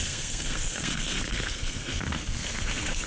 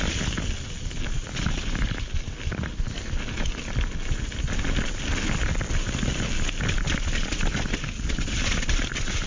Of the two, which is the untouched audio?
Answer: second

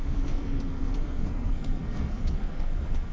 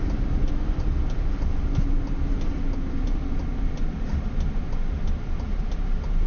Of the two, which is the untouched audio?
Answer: second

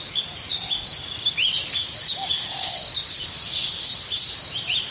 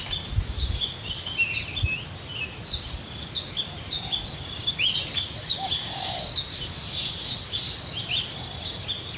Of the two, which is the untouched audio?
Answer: second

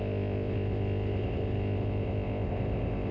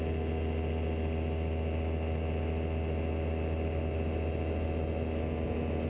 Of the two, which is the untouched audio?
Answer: second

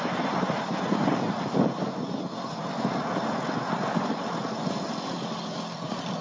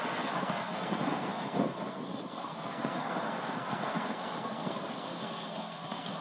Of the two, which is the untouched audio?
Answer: first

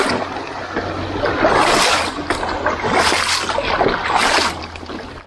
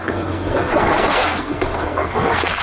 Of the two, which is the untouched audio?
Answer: first